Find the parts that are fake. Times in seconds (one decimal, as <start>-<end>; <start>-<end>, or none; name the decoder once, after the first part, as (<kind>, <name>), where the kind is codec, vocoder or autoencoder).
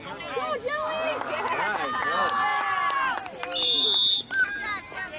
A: none